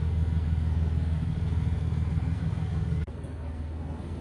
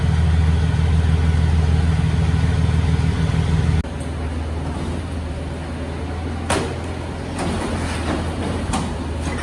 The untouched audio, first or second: second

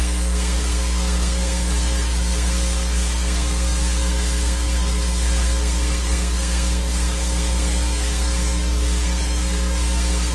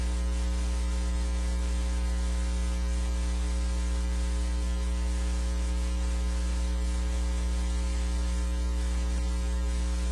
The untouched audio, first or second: second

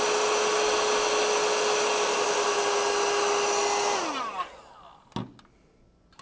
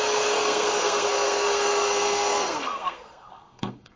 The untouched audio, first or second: first